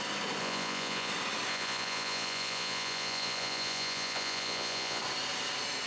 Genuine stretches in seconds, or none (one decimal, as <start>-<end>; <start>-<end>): 0.0-0.4; 1.1-1.5; 5.0-5.9